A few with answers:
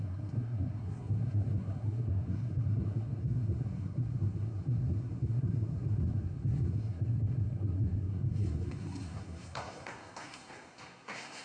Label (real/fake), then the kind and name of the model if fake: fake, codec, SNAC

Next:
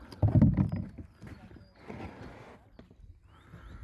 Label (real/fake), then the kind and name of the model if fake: fake, vocoder, BigVGAN v2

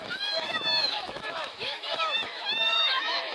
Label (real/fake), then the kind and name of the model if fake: fake, autoencoder, DAC-VAE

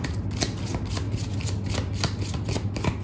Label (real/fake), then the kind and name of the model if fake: real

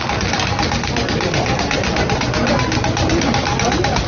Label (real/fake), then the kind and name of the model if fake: real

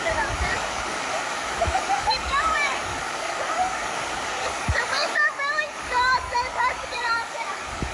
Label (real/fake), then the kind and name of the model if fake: fake, codec, DAC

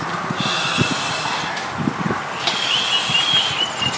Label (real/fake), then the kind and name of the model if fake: real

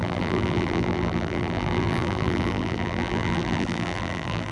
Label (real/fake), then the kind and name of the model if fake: fake, vocoder, BigVGAN v2